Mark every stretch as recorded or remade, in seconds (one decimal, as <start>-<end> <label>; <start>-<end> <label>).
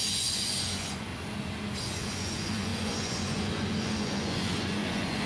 0.0-1.1 remade; 1.1-1.8 recorded; 1.8-5.3 remade